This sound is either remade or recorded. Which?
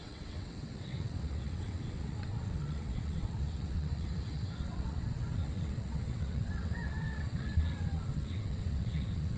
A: remade